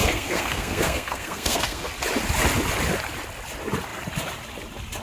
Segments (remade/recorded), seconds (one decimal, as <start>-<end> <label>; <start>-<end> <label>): 0.0-1.9 remade; 1.9-5.0 recorded